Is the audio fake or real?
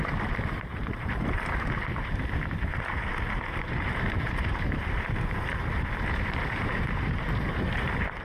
fake